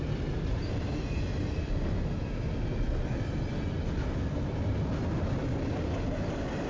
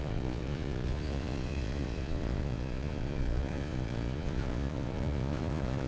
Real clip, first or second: first